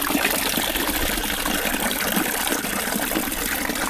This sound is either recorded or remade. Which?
recorded